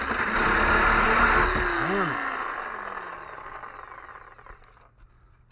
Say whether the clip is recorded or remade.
recorded